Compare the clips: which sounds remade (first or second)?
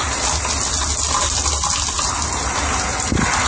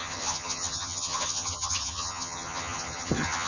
second